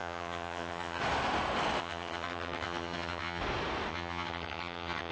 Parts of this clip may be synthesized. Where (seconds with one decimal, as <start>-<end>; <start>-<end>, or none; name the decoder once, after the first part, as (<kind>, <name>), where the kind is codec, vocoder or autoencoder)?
0.0-1.0 (vocoder, HiFi-GAN); 1.8-3.4; 3.9-5.1